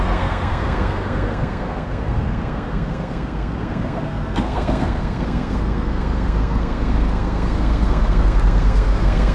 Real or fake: fake